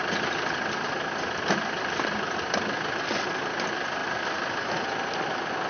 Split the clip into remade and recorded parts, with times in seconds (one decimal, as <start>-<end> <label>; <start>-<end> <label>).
0.0-5.7 recorded